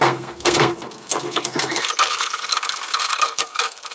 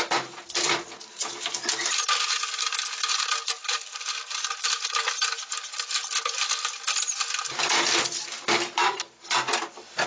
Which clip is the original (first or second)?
second